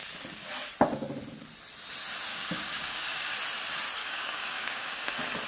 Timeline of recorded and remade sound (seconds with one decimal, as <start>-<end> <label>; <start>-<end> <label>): 0.0-2.3 recorded; 2.3-3.3 remade; 3.3-4.0 recorded; 4.0-5.1 remade; 5.1-5.5 recorded